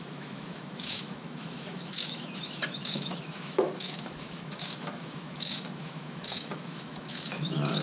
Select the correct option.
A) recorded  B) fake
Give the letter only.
B